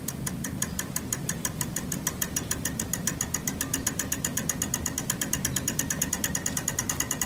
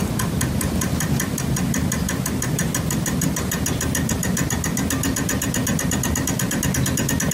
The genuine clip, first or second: second